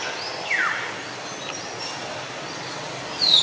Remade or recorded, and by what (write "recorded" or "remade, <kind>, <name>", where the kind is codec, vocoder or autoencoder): recorded